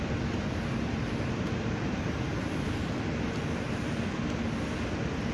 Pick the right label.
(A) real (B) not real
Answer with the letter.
A